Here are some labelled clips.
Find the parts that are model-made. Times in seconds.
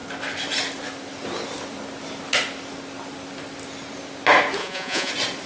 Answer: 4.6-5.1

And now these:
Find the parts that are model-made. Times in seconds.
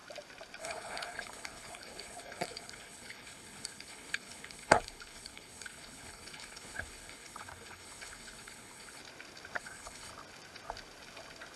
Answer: 0.6-9.0; 9.6-10.1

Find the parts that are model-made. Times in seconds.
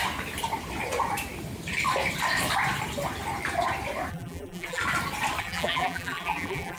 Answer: 4.1-4.8; 5.4-6.8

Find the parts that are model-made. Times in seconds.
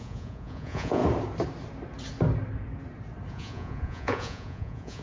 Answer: 0.0-1.0; 3.3-5.0